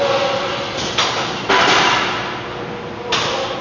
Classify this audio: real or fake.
real